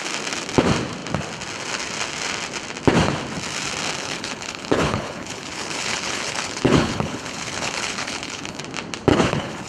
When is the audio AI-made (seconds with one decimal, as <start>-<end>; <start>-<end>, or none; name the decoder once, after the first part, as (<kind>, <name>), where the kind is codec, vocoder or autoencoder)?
4.0-8.6 (codec, HILCodec); 9.1-9.7